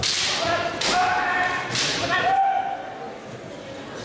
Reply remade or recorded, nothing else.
recorded